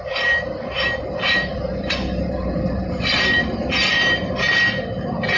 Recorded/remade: remade